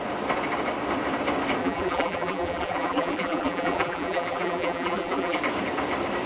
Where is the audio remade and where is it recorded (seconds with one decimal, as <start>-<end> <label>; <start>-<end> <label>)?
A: 0.0-1.6 recorded; 1.6-5.4 remade; 5.4-6.3 recorded

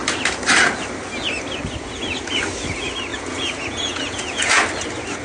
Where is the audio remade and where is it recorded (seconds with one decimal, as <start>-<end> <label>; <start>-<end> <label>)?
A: 0.0-3.1 recorded; 3.1-4.6 remade; 4.6-5.2 recorded

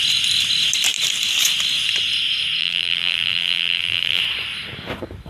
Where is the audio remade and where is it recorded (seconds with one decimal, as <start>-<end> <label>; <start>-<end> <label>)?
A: 0.0-2.6 recorded; 2.6-4.2 remade; 4.2-5.3 recorded

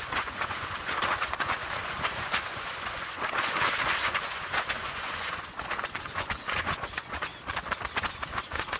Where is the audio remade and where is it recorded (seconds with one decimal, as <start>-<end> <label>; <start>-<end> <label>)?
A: 0.0-7.3 remade; 7.3-8.0 recorded; 8.0-8.8 remade